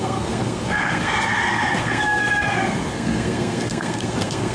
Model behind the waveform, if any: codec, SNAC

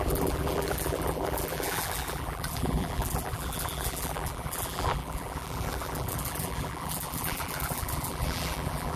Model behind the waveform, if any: vocoder, BigVGAN v2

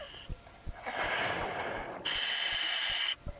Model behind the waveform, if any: none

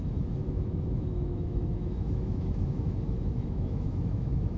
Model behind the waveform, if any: autoencoder, DAC-VAE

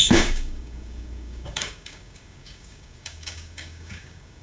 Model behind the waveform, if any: codec, DAC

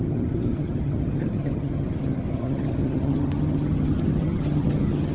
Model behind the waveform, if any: vocoder, HiFi-GAN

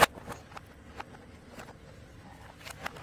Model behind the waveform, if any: none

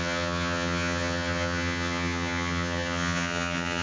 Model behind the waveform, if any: vocoder, HiFi-GAN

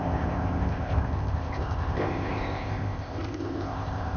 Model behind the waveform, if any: codec, ZipCodec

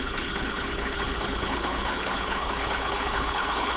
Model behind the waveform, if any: codec, HILCodec